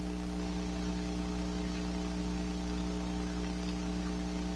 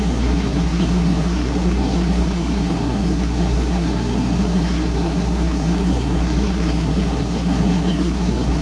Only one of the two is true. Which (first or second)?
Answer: first